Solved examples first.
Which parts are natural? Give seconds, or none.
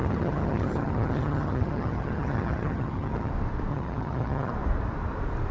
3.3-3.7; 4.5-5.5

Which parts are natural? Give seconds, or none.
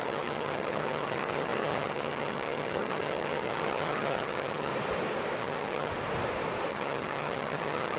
4.7-5.4; 5.9-6.7